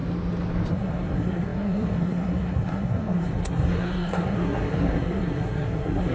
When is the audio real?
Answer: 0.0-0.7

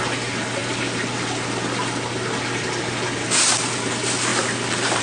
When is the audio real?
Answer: 0.0-5.0

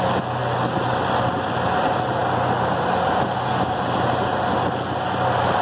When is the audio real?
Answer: 0.0-5.6

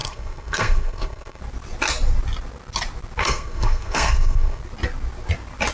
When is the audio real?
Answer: 1.4-3.2; 4.6-5.7

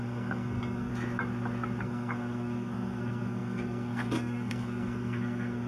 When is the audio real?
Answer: 0.9-1.8